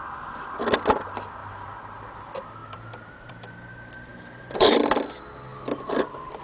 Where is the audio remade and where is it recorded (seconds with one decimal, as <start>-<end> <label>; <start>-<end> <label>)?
0.0-1.4 recorded; 1.4-2.2 remade; 2.2-2.6 recorded; 2.6-3.3 remade; 3.3-4.1 recorded; 4.1-4.8 remade; 4.8-5.5 recorded; 5.5-6.0 remade; 6.0-6.4 recorded